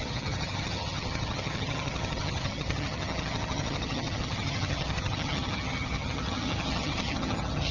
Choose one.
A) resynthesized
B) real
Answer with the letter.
A